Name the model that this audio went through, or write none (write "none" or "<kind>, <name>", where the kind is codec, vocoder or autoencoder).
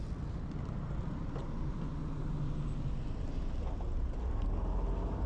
none